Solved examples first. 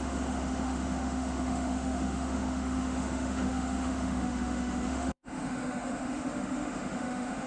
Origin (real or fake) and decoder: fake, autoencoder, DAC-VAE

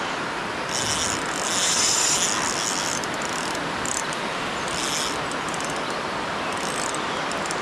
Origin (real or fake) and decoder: real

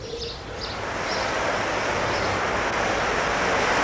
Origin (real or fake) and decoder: real